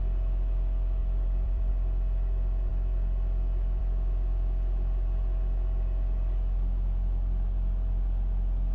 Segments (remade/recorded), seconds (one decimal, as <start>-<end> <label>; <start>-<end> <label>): 0.0-1.0 recorded; 1.0-1.7 remade; 1.7-8.7 recorded